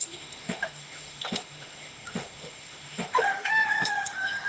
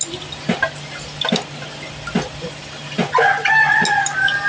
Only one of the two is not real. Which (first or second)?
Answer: first